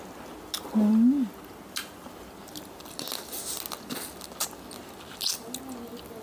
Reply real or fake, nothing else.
real